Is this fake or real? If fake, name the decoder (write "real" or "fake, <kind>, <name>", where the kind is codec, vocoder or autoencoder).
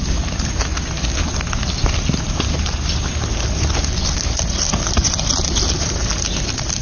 real